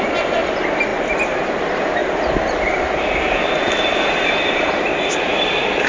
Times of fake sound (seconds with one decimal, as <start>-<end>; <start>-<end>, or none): 2.0-5.5